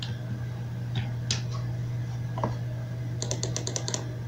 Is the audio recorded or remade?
recorded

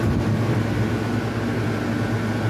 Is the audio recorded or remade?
recorded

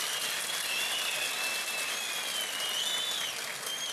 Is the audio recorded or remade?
recorded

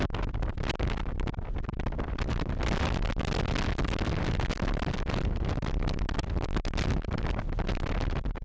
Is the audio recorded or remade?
recorded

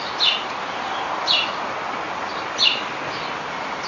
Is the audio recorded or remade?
remade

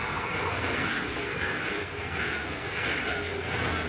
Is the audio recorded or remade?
remade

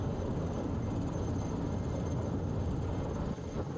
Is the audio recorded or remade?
recorded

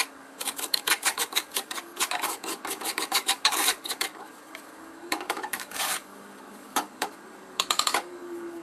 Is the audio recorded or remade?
remade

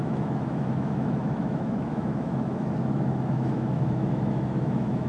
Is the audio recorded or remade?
remade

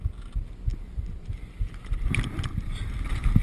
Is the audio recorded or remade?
recorded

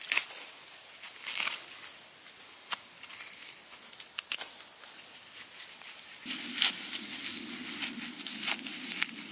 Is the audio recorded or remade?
recorded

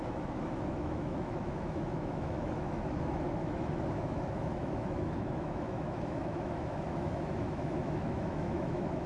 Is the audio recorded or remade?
remade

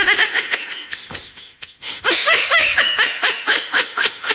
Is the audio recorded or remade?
remade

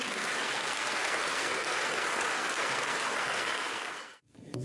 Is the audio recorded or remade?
remade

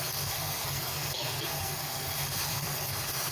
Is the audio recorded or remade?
remade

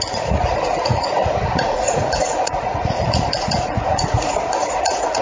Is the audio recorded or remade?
remade